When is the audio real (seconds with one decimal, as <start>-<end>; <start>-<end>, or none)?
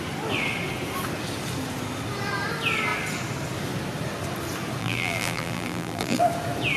0.0-4.8; 6.2-6.8